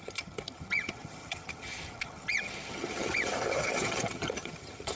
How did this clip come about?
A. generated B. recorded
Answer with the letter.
A